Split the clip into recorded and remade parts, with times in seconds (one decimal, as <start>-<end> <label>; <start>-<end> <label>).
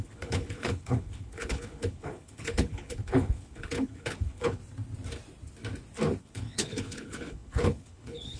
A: 0.0-4.6 remade; 4.6-6.2 recorded; 6.2-8.4 remade